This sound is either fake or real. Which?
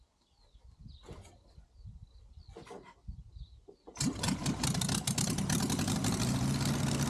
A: real